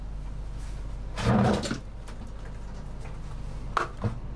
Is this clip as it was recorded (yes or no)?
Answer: yes